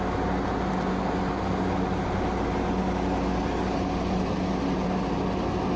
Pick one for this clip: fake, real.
real